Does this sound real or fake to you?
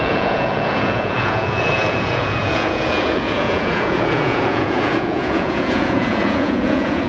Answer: fake